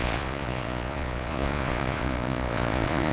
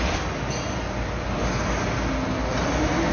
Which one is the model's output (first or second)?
first